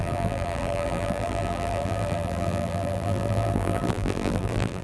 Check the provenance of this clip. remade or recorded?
remade